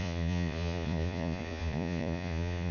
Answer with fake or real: fake